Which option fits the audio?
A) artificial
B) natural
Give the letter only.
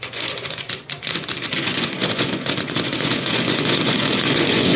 A